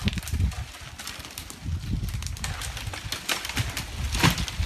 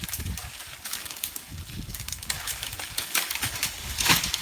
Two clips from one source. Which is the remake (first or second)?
second